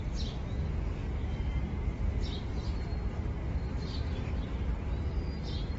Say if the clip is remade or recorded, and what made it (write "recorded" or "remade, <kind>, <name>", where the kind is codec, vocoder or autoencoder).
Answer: recorded